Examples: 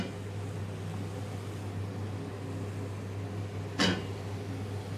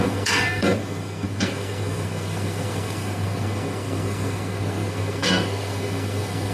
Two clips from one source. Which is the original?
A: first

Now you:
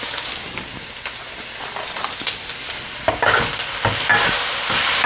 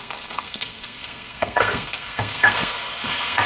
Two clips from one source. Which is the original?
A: first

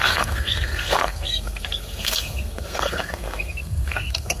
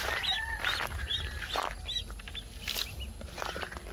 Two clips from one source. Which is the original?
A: second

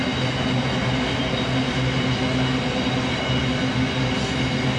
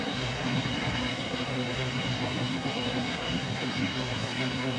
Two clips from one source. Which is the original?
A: first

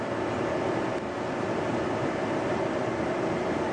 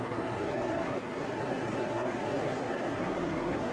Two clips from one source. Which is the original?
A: first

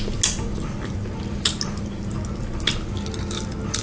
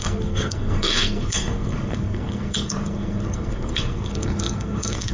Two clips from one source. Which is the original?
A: first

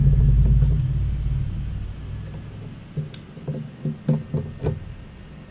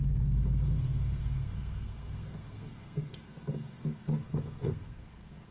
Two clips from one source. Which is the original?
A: first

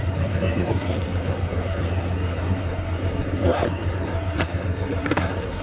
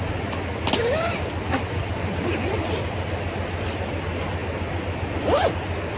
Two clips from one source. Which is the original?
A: second